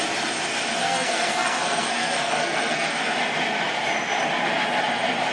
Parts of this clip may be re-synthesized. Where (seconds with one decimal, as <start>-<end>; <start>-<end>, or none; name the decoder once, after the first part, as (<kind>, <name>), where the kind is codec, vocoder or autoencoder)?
0.8-3.0 (codec, SNAC)